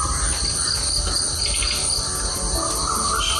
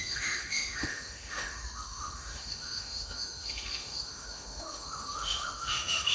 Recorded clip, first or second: first